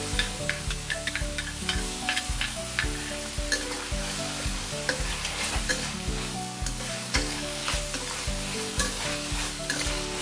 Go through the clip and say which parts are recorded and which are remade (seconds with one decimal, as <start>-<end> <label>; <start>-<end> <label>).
0.0-2.6 remade; 2.6-4.0 recorded; 4.0-5.1 remade; 5.1-5.7 recorded; 5.7-7.6 remade; 7.6-8.7 recorded; 8.7-10.2 remade